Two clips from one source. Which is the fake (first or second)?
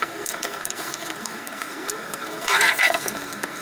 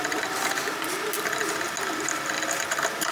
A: first